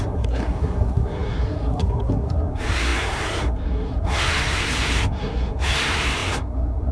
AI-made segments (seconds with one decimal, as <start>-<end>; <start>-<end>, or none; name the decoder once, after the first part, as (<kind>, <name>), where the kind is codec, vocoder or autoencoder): 0.0-6.9 (codec, SNAC)